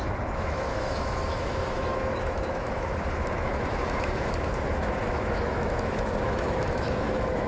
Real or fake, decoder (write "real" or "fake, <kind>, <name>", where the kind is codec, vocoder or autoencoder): fake, autoencoder, DAC-VAE